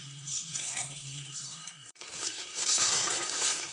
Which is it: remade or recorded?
remade